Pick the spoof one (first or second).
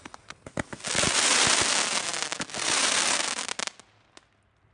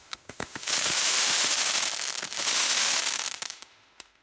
second